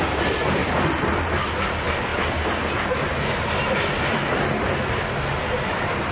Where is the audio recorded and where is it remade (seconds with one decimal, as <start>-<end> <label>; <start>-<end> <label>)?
0.0-6.1 recorded